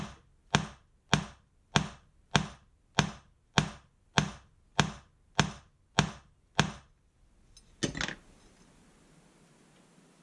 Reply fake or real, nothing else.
real